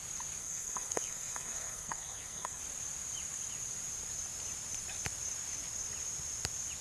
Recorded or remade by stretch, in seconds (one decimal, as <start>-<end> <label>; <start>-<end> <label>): 0.0-0.4 recorded; 0.4-2.6 remade; 2.6-6.8 recorded